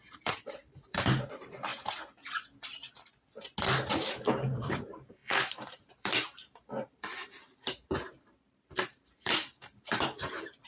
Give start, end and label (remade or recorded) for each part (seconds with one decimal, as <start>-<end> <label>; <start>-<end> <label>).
0.0-1.7 remade; 1.7-4.1 recorded; 4.1-10.7 remade